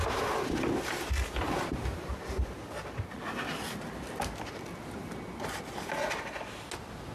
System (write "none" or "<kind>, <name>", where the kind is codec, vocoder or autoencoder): none